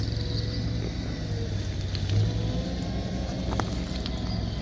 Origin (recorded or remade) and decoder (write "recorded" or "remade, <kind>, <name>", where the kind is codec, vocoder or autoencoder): recorded